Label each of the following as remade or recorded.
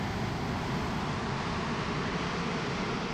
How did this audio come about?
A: recorded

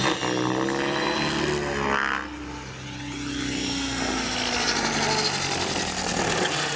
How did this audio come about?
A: recorded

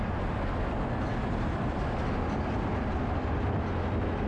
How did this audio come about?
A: recorded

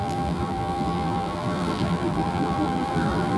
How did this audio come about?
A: remade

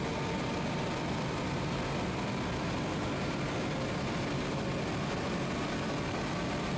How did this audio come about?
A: recorded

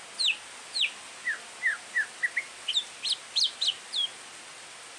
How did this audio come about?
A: recorded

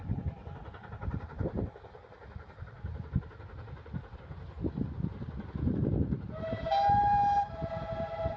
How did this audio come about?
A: recorded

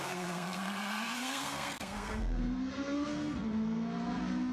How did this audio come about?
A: remade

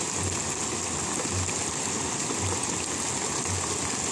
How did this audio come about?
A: recorded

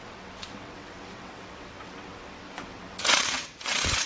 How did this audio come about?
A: remade